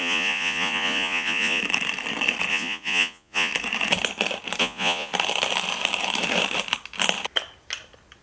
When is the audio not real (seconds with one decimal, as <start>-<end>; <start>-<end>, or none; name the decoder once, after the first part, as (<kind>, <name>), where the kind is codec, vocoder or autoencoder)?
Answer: 0.0-1.6 (vocoder, Vocos); 2.5-3.5; 4.6-5.1